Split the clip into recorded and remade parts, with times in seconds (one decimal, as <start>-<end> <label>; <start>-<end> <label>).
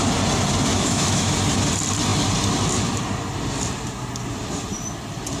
0.0-0.7 recorded; 0.7-1.3 remade; 1.3-5.4 recorded